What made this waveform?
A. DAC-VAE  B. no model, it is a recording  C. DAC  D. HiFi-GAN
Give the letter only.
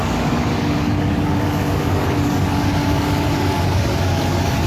C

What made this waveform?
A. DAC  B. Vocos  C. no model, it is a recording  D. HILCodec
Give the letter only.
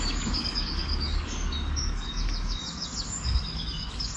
A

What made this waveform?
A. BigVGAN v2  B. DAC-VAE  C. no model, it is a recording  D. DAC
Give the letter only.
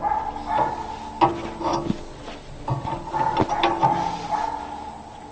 C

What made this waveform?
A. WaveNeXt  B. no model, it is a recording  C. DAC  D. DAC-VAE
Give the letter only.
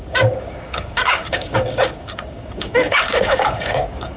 C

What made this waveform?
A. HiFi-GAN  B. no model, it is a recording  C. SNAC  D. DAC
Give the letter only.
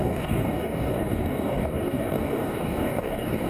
D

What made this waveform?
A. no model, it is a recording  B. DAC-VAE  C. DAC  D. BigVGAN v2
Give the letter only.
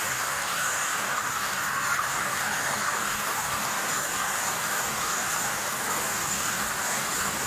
C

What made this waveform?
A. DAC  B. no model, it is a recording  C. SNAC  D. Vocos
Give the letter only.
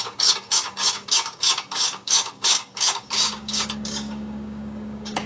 A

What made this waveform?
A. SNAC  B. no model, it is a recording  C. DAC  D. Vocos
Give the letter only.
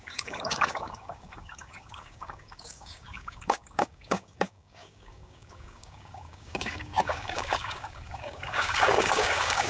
C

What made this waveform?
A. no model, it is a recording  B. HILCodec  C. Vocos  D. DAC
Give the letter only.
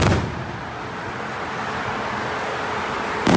A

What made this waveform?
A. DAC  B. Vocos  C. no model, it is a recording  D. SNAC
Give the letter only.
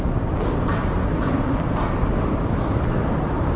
C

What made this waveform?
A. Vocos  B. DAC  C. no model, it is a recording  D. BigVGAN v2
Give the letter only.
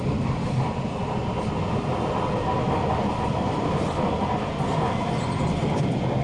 C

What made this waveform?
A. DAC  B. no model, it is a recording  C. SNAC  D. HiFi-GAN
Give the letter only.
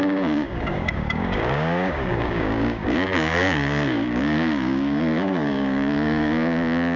A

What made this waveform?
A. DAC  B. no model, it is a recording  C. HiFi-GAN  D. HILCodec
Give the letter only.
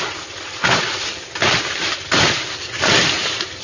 B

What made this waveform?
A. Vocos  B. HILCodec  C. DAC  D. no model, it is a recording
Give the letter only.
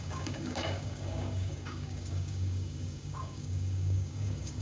C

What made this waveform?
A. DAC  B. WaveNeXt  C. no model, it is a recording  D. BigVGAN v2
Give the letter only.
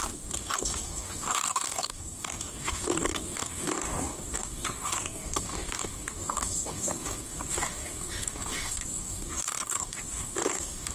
A